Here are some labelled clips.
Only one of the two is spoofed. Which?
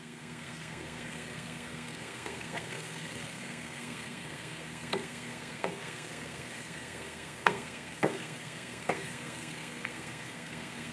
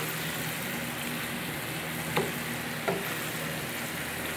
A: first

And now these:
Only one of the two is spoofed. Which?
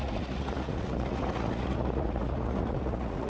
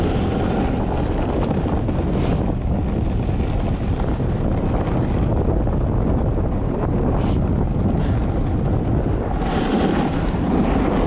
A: first